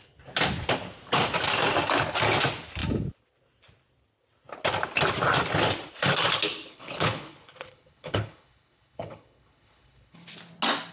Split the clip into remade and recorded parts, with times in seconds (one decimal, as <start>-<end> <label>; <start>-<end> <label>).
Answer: 0.0-6.7 recorded; 6.7-10.3 remade; 10.3-10.9 recorded